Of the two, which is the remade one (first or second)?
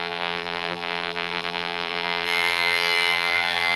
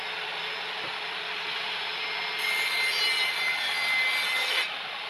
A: first